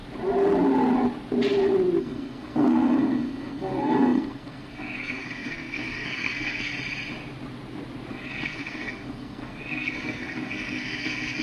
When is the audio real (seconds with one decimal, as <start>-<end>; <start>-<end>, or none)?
0.0-2.0; 6.7-8.1